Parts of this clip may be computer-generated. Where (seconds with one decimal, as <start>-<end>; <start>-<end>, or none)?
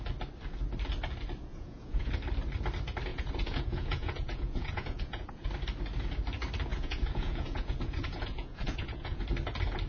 1.5-2.1; 3.1-5.5; 6.7-9.2